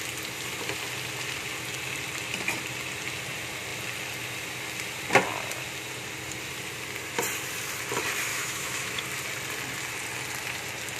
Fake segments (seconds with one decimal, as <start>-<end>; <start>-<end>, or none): 8.3-9.0